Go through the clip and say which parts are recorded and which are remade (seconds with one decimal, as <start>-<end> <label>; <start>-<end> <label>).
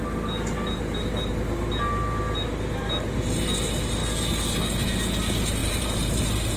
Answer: 0.0-5.6 recorded; 5.6-6.6 remade